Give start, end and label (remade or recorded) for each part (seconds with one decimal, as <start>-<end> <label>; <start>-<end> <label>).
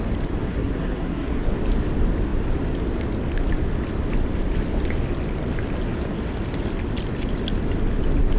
0.0-0.4 recorded; 0.4-1.5 remade; 1.5-8.4 recorded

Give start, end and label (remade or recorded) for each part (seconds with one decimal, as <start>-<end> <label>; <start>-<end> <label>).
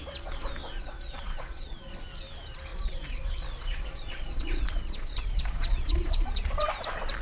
0.0-0.8 recorded; 0.8-1.9 remade; 1.9-2.7 recorded; 2.7-6.7 remade; 6.7-7.2 recorded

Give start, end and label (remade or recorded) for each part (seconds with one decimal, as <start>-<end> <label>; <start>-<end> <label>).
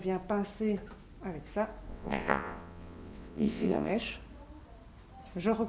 0.0-1.9 recorded; 1.9-3.9 remade; 3.9-5.7 recorded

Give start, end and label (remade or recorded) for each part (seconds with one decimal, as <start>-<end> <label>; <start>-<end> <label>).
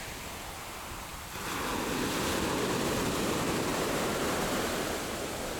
0.0-3.7 recorded; 3.7-5.0 remade; 5.0-5.6 recorded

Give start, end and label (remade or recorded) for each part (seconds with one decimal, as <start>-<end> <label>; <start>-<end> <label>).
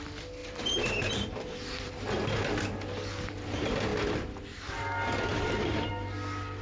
0.0-0.4 recorded; 0.4-1.9 remade; 1.9-5.3 recorded; 5.3-5.9 remade; 5.9-6.6 recorded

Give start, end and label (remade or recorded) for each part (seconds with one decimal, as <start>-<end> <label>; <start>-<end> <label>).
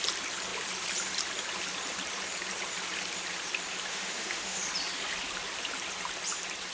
0.0-3.9 recorded; 3.9-4.6 remade; 4.6-6.7 recorded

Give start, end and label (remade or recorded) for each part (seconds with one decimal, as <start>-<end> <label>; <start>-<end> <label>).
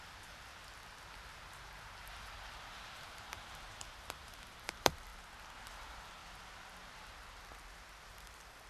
0.0-0.5 remade; 0.5-1.3 recorded; 1.3-5.1 remade; 5.1-5.7 recorded; 5.7-6.2 remade; 6.2-8.1 recorded; 8.1-8.7 remade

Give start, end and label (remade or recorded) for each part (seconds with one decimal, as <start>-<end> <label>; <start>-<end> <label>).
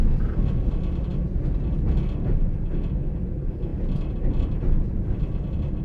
0.0-3.7 recorded; 3.7-5.8 remade